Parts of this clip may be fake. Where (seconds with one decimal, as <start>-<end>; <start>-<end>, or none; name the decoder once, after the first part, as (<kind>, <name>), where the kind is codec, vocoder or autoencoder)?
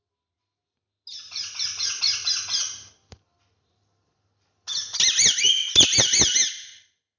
none